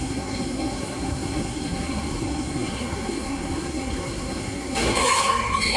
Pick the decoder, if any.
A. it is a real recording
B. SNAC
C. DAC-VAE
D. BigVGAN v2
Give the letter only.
B